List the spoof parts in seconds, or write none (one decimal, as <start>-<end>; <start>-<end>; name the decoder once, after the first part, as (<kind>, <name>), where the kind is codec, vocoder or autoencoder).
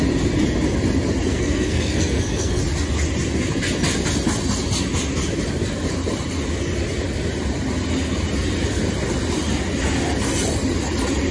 1.3-2.6 (codec, SNAC)